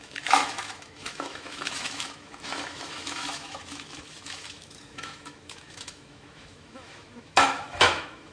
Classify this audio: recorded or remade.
remade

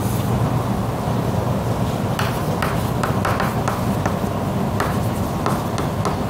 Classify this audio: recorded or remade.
recorded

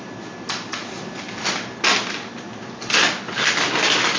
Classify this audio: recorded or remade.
recorded